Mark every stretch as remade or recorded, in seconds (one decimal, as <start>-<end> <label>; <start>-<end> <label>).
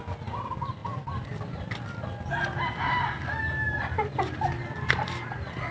0.0-5.7 recorded